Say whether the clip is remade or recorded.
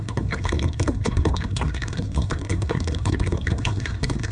remade